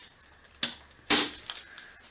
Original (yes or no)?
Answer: yes